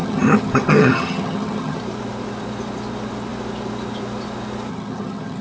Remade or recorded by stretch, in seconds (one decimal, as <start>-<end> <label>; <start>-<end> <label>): 0.0-1.8 remade; 1.8-4.7 recorded; 4.7-5.4 remade